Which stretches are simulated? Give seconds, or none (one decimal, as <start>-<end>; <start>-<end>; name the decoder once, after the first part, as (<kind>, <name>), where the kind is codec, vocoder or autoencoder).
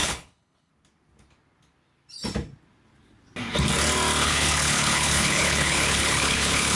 0.0-0.7 (codec, HILCodec); 4.2-6.8